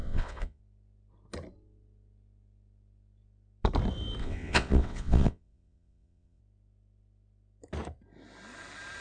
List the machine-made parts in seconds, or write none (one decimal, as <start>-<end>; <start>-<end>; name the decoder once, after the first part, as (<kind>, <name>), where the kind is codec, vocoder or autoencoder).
0.0-0.6 (vocoder, WaveNeXt); 4.2-6.4